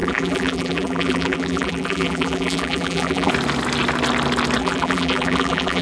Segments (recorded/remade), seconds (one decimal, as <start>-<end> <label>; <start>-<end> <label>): 0.0-3.3 remade; 3.3-4.6 recorded; 4.6-5.8 remade